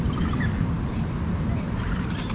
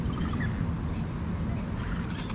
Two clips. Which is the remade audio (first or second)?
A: first